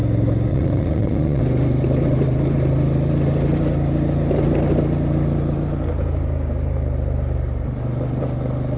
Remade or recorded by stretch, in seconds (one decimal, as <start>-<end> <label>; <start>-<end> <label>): 0.0-0.5 recorded; 0.5-1.4 remade; 1.4-8.8 recorded